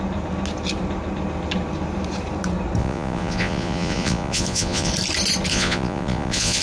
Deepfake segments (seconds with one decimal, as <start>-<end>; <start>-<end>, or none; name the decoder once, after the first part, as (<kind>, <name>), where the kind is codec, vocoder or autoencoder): 2.8-4.9 (vocoder, Vocos); 5.5-6.6

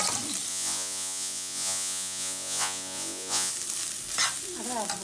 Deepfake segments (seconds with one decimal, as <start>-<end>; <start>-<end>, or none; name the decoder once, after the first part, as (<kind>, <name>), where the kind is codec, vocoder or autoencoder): 0.5-3.5 (vocoder, Vocos)